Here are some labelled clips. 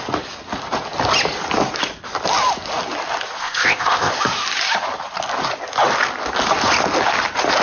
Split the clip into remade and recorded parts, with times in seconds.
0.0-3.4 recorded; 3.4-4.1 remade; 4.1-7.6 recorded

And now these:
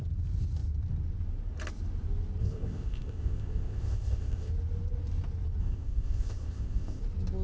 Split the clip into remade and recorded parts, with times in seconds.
0.0-2.4 recorded; 2.4-4.5 remade; 4.5-5.6 recorded; 5.6-7.0 remade; 7.0-7.4 recorded